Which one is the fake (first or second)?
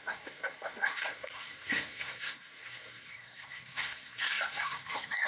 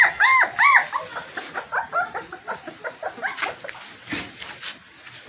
first